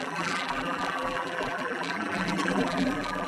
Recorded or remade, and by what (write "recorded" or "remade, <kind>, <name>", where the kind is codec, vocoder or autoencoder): remade, vocoder, BigVGAN v2